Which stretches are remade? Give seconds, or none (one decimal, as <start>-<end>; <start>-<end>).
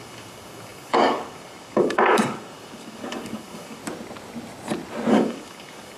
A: 0.0-3.8; 5.1-6.0